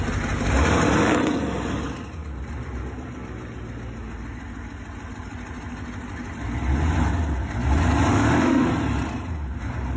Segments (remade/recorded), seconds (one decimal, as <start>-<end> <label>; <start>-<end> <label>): 0.0-8.1 recorded; 8.1-8.7 remade; 8.7-10.0 recorded